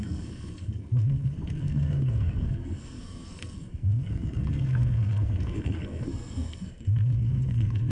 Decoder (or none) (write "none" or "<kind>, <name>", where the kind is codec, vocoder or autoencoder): codec, SNAC